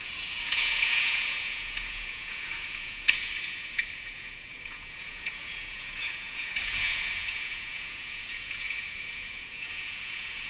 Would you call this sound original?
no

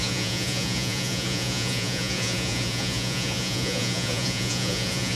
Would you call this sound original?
no